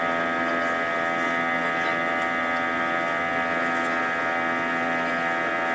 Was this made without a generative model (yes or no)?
yes